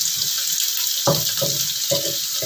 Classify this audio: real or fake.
real